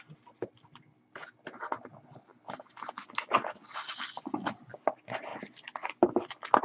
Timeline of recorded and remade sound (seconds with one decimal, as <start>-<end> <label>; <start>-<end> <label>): 0.0-2.3 recorded; 2.3-3.2 remade; 3.2-6.6 recorded